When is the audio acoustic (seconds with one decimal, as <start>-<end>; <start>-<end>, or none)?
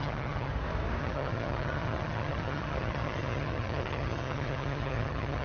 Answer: 0.5-1.0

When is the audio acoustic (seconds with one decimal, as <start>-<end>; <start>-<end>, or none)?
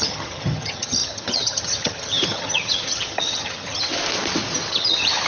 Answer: 3.9-4.7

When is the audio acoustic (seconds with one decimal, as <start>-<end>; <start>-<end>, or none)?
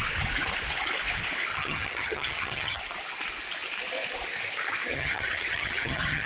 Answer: 0.0-1.5; 2.8-4.9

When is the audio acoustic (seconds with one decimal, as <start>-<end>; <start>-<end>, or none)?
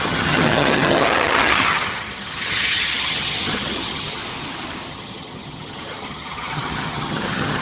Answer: 4.2-4.9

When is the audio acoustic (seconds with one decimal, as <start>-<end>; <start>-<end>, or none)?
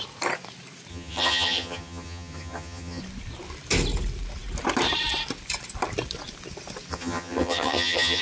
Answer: 0.0-0.9; 3.0-6.9